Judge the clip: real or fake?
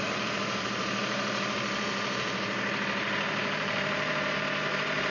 fake